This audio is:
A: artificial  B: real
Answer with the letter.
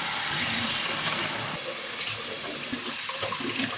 B